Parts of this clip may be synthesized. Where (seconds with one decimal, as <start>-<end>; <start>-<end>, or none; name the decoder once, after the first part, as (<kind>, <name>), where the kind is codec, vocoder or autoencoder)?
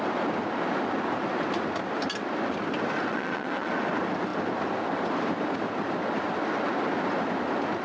3.1-3.7 (vocoder, WaveNeXt)